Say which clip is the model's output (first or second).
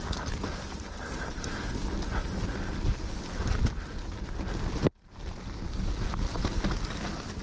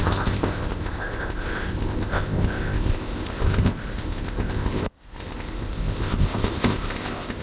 second